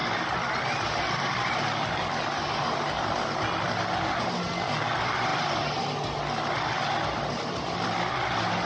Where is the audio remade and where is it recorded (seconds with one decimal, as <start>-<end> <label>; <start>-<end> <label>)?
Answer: 0.0-8.7 recorded